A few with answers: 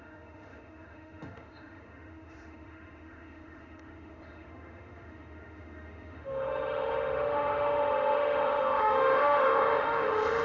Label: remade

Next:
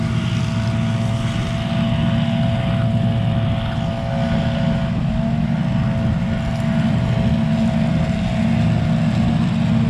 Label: recorded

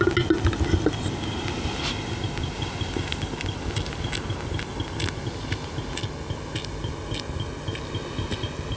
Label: recorded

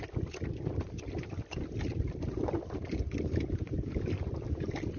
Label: recorded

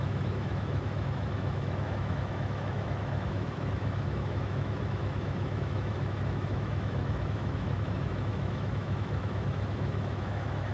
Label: remade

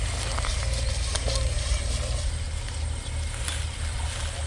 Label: recorded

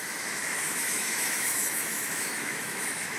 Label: remade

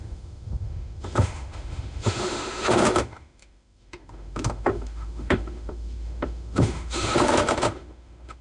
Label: remade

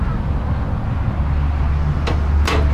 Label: recorded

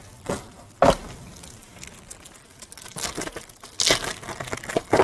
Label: recorded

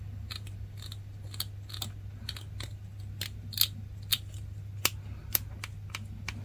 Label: recorded